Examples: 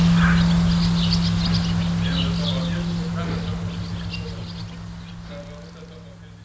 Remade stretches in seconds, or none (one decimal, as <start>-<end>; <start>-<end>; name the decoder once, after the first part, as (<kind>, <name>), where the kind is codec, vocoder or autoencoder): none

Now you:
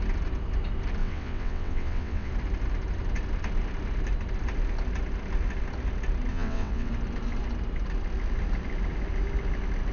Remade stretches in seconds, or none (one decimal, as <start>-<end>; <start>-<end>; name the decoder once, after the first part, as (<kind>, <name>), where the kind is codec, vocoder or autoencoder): 1.0-2.3 (vocoder, WaveNeXt); 6.3-6.9

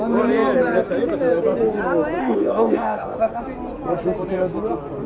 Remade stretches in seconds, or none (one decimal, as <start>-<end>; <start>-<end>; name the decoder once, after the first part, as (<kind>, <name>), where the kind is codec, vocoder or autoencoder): 2.2-3.4 (codec, ZipCodec)